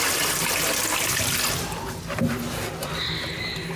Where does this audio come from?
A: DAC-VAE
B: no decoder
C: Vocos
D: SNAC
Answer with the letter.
B